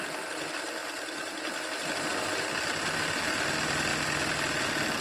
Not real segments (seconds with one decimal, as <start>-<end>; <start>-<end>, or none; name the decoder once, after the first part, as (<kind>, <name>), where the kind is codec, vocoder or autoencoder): none